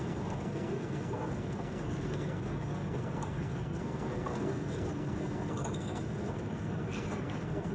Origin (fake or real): fake